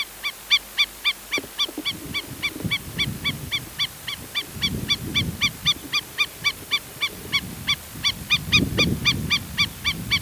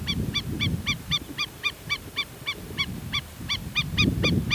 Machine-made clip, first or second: second